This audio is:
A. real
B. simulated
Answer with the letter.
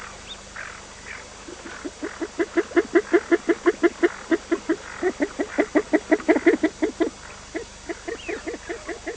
A